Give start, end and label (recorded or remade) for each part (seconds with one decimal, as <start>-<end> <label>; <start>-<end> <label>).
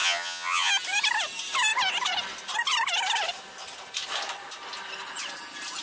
0.0-0.7 remade; 0.7-5.8 recorded